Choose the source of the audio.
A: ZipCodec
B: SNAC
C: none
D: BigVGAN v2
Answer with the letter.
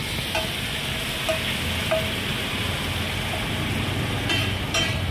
C